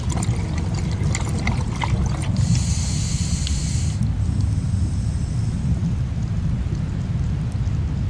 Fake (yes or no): no